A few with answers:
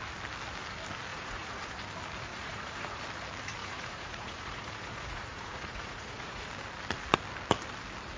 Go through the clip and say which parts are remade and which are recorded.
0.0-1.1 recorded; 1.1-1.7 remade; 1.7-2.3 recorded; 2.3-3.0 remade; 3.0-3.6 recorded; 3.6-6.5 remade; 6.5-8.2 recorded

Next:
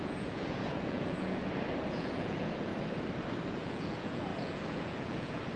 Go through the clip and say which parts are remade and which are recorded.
0.0-1.4 remade; 1.4-1.9 recorded; 1.9-2.7 remade; 2.7-3.6 recorded; 3.6-5.6 remade